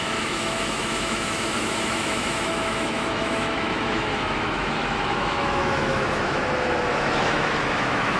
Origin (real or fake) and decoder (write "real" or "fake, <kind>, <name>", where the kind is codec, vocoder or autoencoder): fake, autoencoder, DAC-VAE